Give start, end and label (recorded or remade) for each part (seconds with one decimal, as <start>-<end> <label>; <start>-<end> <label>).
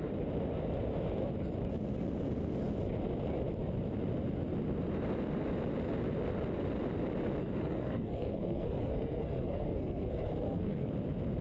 0.0-7.4 recorded; 7.4-10.9 remade; 10.9-11.4 recorded